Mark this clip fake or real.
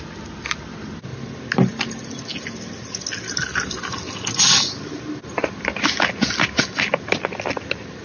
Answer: real